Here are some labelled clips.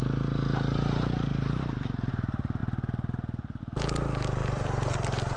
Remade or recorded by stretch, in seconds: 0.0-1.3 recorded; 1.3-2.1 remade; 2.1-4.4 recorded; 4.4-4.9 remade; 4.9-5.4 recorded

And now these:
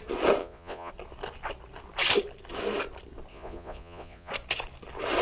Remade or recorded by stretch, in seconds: 0.0-0.4 recorded; 0.4-0.9 remade; 0.9-3.3 recorded; 3.3-4.3 remade; 4.3-5.2 recorded

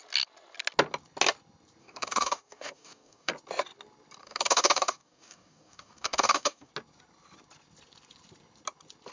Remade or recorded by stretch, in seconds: 0.0-1.8 recorded; 1.8-3.3 remade; 3.3-4.2 recorded; 4.2-6.7 remade; 6.7-9.1 recorded